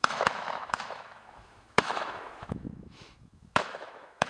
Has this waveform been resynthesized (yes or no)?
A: yes